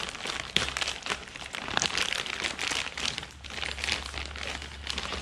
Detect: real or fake real